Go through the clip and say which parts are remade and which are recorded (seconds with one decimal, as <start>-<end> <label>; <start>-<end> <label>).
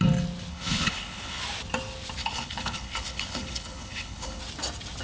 0.0-0.5 recorded; 0.5-1.4 remade; 1.4-2.2 recorded; 2.2-4.4 remade; 4.4-5.0 recorded